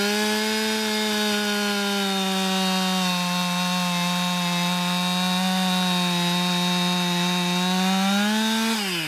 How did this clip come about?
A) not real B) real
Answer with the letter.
B